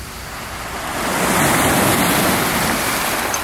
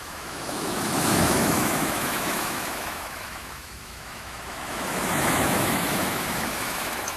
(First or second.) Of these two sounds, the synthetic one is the second